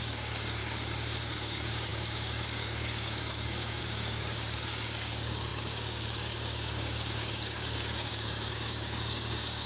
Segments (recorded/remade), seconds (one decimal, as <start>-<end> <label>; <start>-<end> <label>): 0.0-0.6 remade; 0.6-1.3 recorded; 1.3-9.7 remade